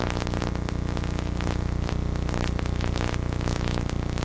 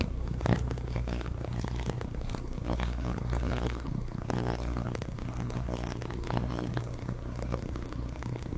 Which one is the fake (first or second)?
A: second